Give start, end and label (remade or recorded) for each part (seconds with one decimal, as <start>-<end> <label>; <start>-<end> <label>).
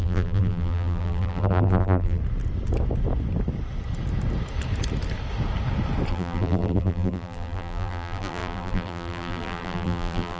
0.0-2.2 remade; 2.2-6.1 recorded; 6.1-10.4 remade